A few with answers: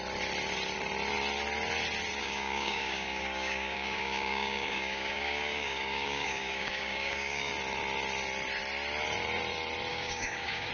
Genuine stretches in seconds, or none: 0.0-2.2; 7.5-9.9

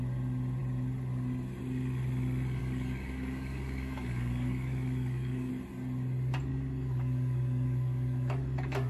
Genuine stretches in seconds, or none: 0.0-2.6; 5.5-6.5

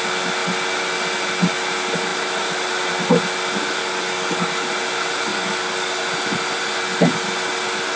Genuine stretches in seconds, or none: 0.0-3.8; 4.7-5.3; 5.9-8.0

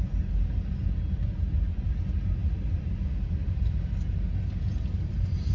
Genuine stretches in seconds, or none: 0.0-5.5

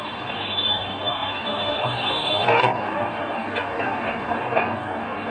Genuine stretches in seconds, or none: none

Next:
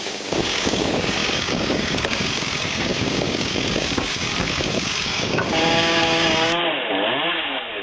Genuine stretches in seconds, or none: 6.6-7.3